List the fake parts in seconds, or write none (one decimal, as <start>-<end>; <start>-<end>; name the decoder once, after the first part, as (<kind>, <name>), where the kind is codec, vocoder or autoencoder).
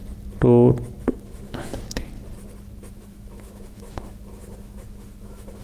1.0-1.7 (autoencoder, DAC-VAE); 2.9-5.6